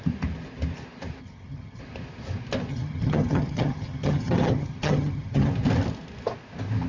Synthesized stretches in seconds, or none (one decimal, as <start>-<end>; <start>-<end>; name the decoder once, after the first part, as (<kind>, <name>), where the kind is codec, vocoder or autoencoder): 1.2-1.8 (vocoder, HiFi-GAN); 2.7-5.5